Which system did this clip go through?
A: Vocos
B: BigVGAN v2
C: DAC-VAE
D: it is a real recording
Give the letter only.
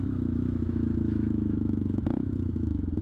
C